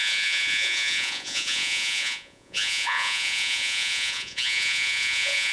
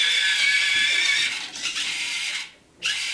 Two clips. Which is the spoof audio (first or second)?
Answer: first